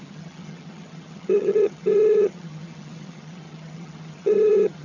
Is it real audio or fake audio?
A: fake